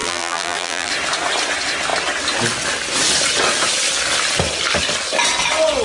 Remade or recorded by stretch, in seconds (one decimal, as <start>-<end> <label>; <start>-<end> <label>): 0.0-0.9 remade; 0.9-5.8 recorded